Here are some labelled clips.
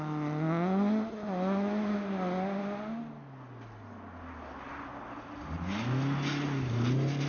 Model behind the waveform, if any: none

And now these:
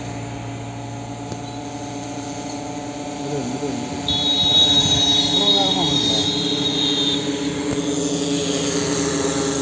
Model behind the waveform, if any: none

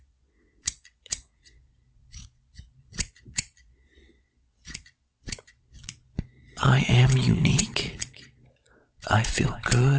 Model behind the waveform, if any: vocoder, Vocos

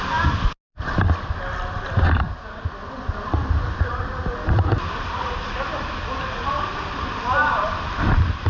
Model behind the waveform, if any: none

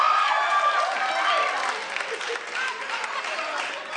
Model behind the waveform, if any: none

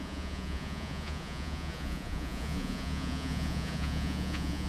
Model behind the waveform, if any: vocoder, Vocos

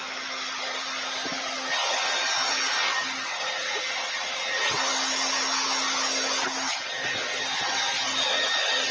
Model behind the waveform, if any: none